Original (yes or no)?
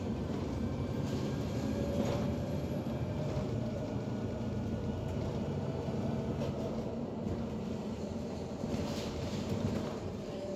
no